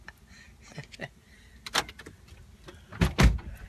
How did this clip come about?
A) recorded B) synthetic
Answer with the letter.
A